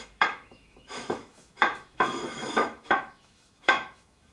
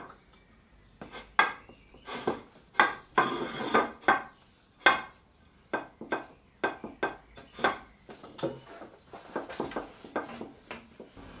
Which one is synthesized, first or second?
first